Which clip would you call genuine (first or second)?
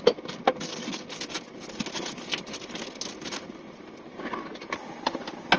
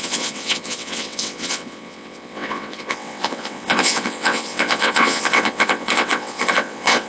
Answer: first